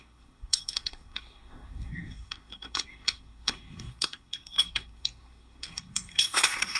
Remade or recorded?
remade